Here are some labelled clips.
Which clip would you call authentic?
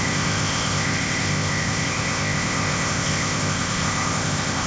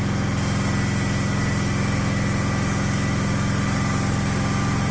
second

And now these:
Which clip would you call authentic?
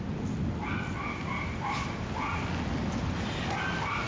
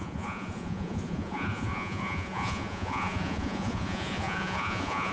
first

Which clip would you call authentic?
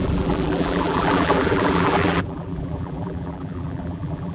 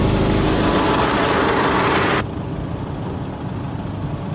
second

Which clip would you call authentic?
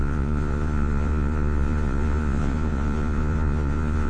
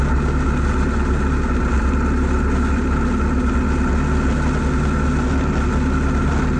second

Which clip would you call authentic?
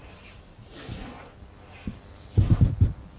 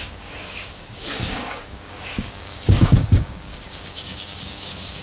first